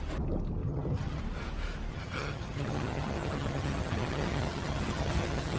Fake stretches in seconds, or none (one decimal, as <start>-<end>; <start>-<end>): 0.6-1.2; 1.9-5.6